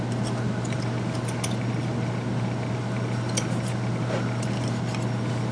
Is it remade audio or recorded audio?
recorded